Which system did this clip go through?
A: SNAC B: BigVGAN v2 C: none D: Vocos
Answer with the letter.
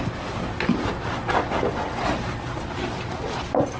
C